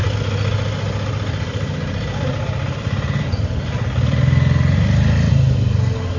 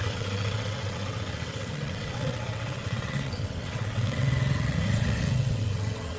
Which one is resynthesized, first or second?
second